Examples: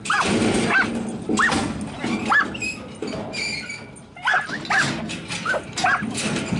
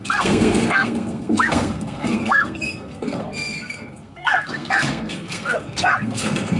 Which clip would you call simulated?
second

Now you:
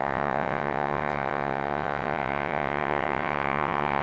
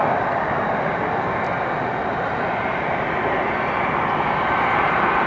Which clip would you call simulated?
first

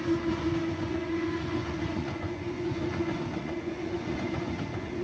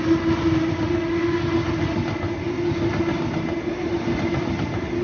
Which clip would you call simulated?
first